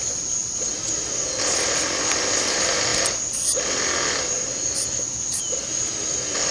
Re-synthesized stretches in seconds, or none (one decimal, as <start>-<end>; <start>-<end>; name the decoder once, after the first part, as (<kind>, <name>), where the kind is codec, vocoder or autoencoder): none